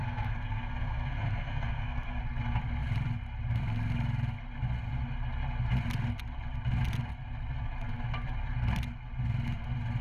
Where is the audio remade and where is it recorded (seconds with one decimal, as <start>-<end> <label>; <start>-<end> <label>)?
0.0-2.2 remade; 2.2-10.0 recorded